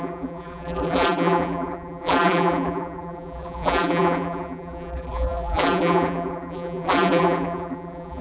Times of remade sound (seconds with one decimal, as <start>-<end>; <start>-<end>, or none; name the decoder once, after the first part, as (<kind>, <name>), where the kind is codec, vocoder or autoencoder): 0.0-8.2 (vocoder, BigVGAN v2)